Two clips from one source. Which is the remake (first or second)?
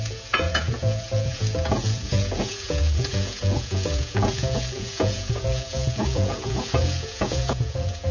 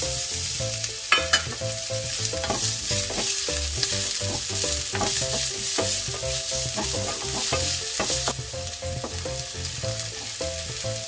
first